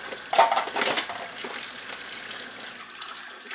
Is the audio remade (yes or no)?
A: no